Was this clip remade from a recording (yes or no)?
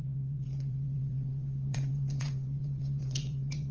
yes